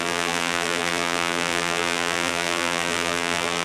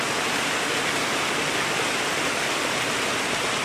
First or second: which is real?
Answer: second